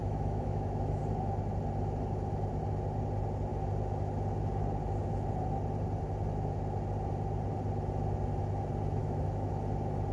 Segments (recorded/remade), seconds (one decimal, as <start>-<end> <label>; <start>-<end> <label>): 0.0-1.0 remade; 1.0-9.0 recorded; 9.0-9.5 remade; 9.5-10.1 recorded